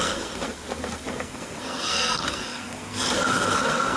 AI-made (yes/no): yes